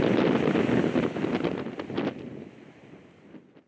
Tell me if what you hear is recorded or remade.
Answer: recorded